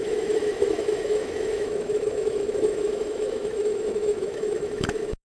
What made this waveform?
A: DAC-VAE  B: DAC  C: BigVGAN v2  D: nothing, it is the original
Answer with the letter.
A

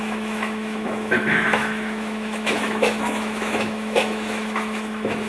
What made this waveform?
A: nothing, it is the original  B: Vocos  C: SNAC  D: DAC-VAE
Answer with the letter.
D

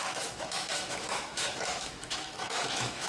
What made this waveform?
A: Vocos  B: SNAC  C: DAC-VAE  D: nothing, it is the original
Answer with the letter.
C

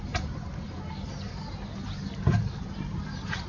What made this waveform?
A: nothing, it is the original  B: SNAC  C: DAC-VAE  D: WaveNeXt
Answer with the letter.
A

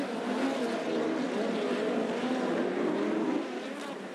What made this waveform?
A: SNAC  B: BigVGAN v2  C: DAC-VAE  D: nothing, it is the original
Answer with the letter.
D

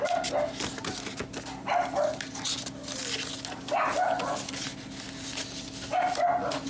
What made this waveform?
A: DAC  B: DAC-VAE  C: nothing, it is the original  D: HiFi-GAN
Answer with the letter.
C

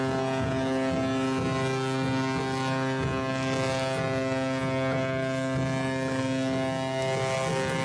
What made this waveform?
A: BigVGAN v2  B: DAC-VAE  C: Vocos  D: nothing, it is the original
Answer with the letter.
D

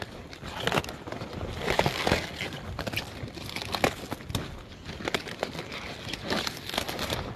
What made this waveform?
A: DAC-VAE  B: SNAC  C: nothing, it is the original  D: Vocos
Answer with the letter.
C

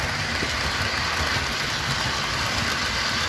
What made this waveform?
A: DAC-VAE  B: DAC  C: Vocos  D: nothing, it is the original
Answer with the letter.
D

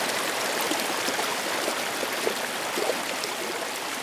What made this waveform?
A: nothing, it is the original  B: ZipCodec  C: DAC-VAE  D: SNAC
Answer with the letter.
A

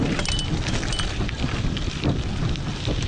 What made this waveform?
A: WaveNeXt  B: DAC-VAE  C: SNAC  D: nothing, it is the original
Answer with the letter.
D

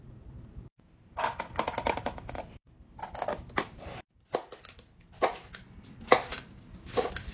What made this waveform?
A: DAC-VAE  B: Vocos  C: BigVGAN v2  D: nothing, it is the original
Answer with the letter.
D